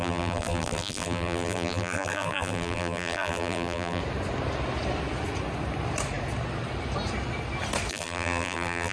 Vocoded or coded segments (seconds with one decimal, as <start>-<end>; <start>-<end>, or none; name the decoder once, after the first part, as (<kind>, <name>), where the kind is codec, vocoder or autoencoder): 0.0-4.0 (vocoder, BigVGAN v2); 7.9-8.9